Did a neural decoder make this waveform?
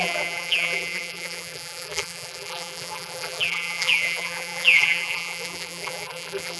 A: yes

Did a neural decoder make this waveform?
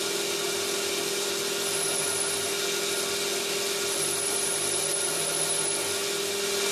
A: no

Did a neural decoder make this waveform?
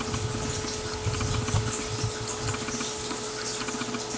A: no